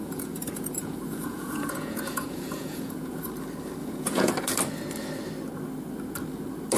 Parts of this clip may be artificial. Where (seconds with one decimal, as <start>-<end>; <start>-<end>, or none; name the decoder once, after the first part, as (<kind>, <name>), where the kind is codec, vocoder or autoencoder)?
0.0-3.2 (vocoder, Vocos); 3.8-4.3

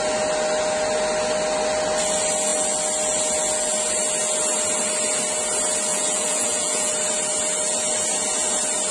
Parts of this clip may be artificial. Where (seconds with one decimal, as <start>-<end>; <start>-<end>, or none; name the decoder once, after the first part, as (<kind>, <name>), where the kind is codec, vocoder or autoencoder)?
5.9-6.9 (vocoder, Vocos)